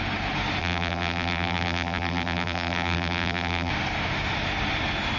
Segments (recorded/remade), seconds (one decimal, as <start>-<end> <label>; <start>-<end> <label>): 0.0-0.6 recorded; 0.6-3.7 remade; 3.7-5.2 recorded